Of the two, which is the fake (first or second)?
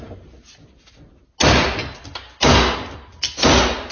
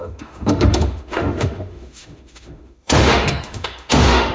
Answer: second